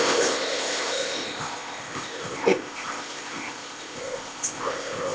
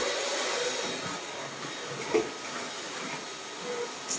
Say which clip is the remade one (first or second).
first